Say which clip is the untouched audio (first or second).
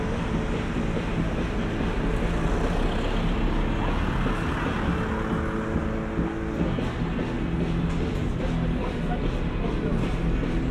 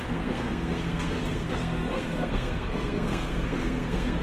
first